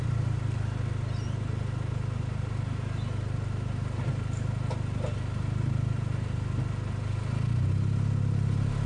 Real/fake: real